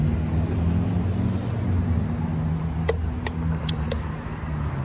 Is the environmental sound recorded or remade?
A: recorded